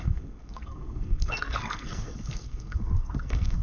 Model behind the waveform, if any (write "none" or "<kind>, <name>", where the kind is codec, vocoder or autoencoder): codec, SNAC